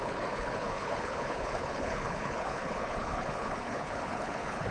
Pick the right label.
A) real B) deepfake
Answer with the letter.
B